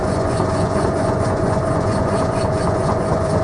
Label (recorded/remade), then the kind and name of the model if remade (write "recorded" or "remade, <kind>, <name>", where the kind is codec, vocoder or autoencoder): remade, vocoder, Vocos